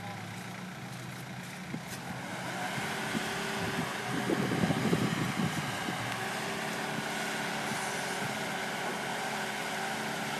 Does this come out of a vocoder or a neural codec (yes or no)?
no